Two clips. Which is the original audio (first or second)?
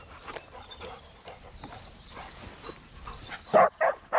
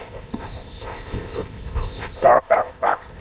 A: first